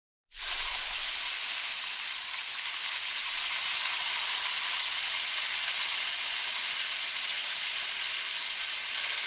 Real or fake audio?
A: real